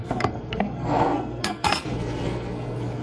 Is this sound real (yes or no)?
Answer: no